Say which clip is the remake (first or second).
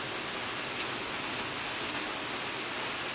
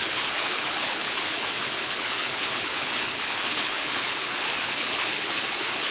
second